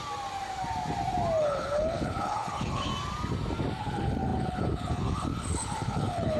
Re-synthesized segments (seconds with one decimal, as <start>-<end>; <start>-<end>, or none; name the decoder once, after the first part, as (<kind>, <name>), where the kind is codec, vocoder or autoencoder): 1.4-2.9 (codec, HILCodec); 3.8-6.4